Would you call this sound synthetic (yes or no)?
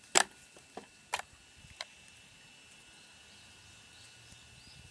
no